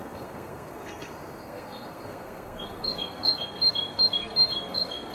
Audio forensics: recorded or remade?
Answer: remade